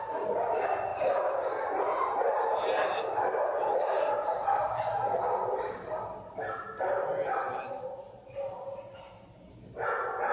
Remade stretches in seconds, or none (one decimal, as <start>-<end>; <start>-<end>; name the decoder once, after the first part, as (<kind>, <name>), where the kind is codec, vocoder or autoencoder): none